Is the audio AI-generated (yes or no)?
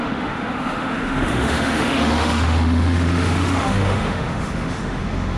yes